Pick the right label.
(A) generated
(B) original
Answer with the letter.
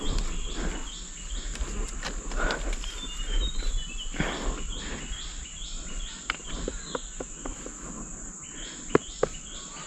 B